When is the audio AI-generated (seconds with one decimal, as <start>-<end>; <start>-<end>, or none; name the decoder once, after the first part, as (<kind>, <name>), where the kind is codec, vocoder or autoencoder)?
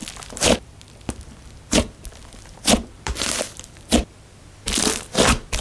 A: 0.0-5.6 (vocoder, BigVGAN v2)